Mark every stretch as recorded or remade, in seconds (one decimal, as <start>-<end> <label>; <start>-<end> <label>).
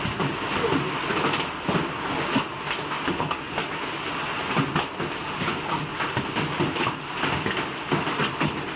0.0-8.8 recorded